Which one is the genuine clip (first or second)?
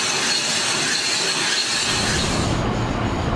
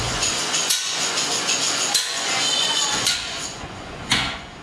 first